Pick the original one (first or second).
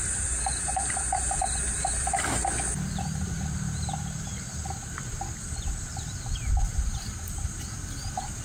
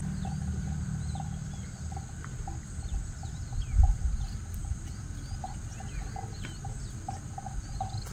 second